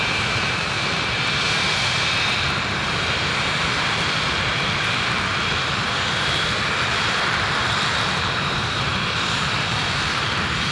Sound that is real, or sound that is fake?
fake